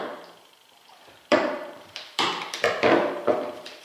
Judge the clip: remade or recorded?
remade